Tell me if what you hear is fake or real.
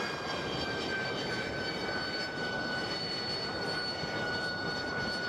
fake